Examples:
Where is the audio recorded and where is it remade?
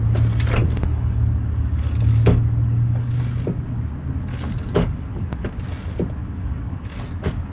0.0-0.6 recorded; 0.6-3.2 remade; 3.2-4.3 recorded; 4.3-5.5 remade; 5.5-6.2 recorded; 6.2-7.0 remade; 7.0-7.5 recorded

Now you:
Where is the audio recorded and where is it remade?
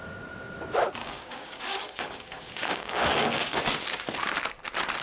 0.0-1.0 recorded; 1.0-3.6 remade; 3.6-5.0 recorded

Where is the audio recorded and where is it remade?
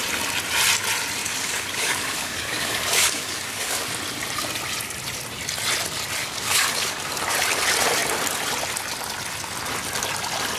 0.0-1.2 recorded; 1.2-3.9 remade; 3.9-6.2 recorded; 6.2-7.1 remade; 7.1-10.6 recorded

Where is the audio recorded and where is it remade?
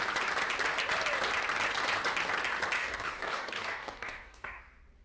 0.0-2.8 recorded; 2.8-4.6 remade; 4.6-5.0 recorded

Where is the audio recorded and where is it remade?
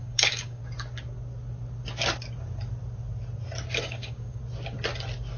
0.0-0.6 remade; 0.6-3.8 recorded; 3.8-4.4 remade; 4.4-5.4 recorded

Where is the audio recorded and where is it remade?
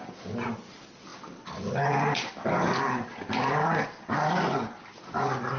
0.0-5.6 recorded